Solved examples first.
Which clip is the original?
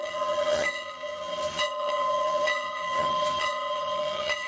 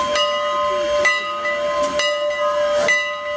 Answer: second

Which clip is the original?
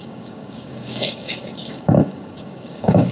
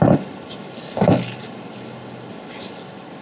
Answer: second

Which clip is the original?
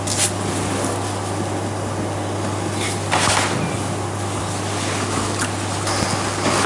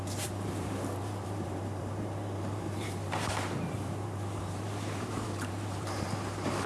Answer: first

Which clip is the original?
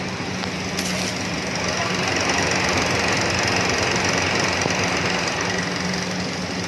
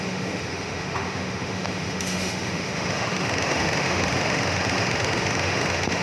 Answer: first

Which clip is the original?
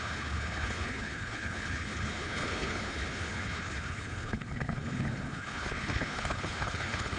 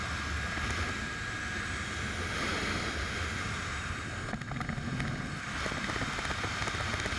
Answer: second